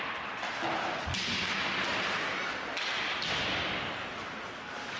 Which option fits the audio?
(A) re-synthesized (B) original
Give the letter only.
B